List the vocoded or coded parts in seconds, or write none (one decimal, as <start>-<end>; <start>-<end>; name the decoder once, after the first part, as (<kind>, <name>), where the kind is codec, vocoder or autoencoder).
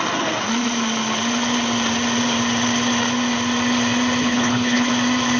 4.2-4.9 (codec, HILCodec)